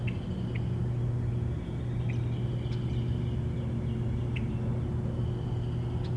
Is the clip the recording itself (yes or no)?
yes